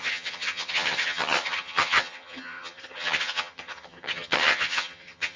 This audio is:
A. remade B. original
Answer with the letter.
A